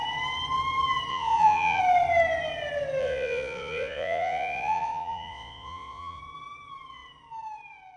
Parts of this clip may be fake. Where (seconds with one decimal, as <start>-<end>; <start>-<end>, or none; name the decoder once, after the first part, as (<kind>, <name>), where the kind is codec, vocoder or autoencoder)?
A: 1.1-1.8 (vocoder, Vocos); 3.0-6.2